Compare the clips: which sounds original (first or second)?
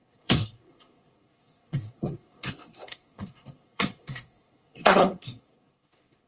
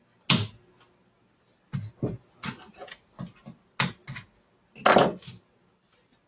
second